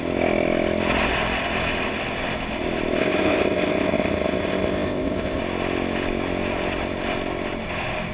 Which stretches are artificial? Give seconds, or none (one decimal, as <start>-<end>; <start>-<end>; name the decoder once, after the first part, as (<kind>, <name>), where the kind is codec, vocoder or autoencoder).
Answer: 3.0-5.4 (codec, ZipCodec)